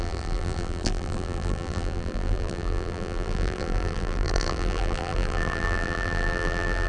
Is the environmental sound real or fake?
fake